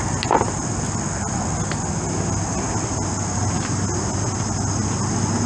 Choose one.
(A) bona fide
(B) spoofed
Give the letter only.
A